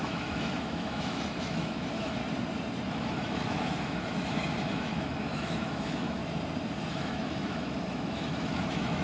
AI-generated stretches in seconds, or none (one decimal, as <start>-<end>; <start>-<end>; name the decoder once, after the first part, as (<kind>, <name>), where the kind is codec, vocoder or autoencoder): 0.0-2.2 (autoencoder, DAC-VAE); 2.9-6.2; 6.9-9.0